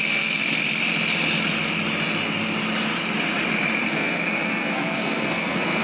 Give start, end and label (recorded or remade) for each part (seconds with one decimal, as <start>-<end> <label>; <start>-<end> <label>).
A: 0.0-0.4 remade; 0.4-3.9 recorded; 3.9-5.8 remade